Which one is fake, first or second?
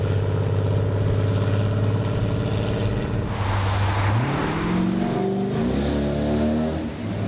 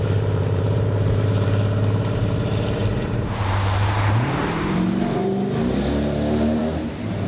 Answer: second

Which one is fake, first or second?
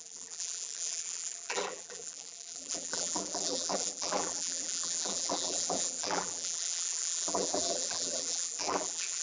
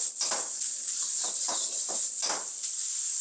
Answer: first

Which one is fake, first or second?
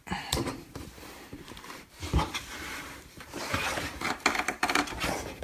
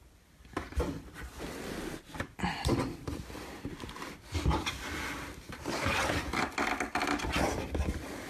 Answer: first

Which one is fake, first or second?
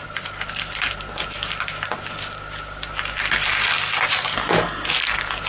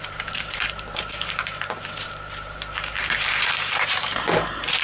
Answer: second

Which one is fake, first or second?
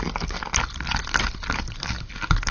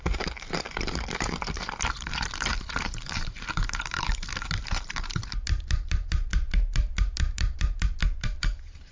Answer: second